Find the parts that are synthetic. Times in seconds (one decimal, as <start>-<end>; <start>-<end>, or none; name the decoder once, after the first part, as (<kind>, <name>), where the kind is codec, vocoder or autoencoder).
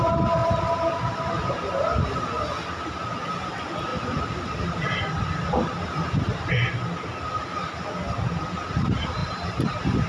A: 0.4-1.2 (vocoder, BigVGAN v2); 9.2-10.1